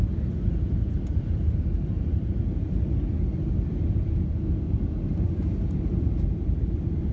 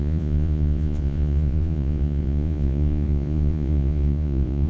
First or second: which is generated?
second